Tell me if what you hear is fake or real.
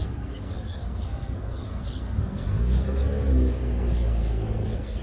fake